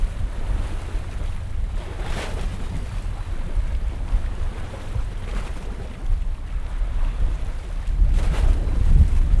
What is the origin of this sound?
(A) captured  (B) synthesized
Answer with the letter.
A